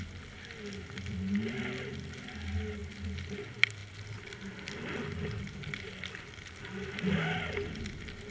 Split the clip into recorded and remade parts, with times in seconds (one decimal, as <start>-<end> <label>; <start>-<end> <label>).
0.0-8.3 recorded